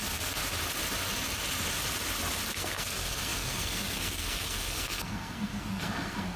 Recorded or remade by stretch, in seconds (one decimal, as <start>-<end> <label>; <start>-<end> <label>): 0.0-0.4 remade; 0.4-2.5 recorded; 2.5-6.4 remade